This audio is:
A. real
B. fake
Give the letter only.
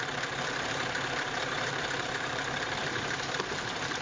B